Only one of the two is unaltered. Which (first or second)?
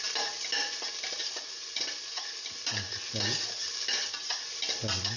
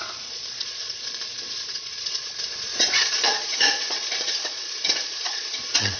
first